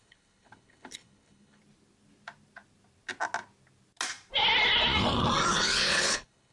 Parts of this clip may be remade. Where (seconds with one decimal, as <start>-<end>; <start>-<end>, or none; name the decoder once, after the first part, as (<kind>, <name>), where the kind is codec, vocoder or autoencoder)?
0.0-1.6 (codec, HILCodec); 5.5-6.5